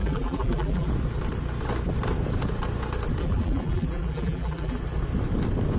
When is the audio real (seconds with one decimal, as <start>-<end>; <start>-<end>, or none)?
0.9-3.2; 4.8-5.8